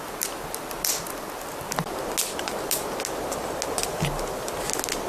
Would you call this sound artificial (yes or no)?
no